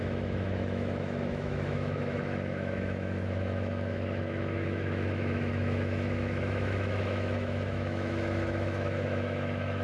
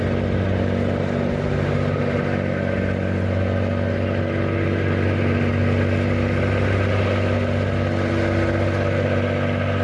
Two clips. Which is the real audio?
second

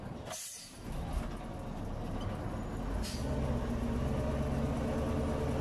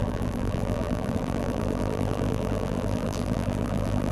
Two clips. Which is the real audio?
first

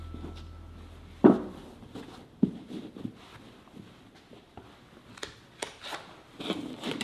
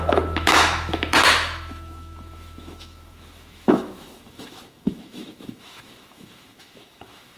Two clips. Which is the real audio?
first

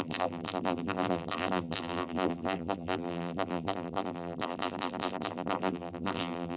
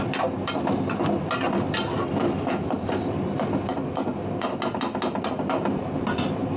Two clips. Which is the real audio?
second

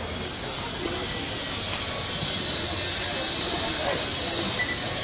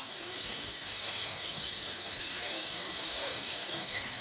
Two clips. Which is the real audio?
first